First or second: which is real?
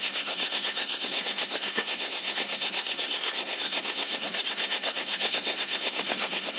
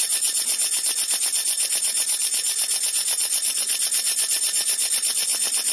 second